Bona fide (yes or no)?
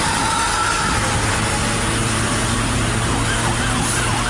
yes